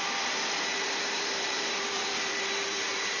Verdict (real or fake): fake